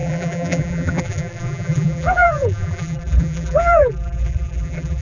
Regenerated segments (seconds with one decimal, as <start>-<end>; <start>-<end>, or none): 0.0-5.0